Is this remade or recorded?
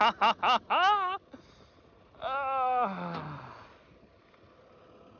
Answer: recorded